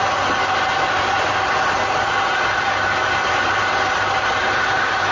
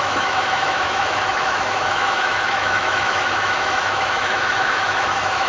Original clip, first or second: first